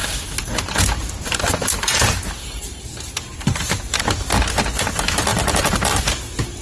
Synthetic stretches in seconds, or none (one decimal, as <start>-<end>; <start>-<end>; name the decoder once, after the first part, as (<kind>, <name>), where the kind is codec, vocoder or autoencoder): 0.0-4.0 (vocoder, BigVGAN v2); 5.3-6.0